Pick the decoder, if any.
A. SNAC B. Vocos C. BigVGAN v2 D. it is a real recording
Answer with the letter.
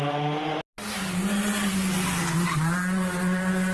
D